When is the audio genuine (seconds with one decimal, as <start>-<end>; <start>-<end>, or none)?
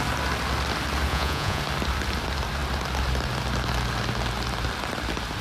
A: 0.0-1.1; 1.6-5.4